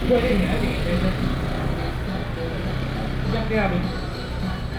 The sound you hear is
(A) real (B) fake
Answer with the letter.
A